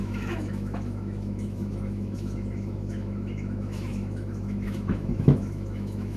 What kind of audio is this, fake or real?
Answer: fake